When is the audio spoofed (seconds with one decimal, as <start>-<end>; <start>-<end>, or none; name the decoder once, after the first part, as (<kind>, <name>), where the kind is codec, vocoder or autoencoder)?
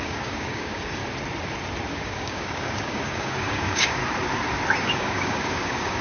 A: 0.0-1.0 (codec, DAC); 1.9-4.0; 4.8-6.0